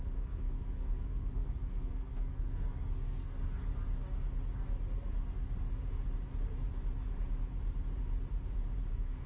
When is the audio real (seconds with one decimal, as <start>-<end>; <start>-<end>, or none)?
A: 3.7-8.9